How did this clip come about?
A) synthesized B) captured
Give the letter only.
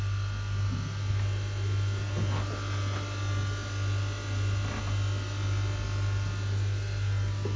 B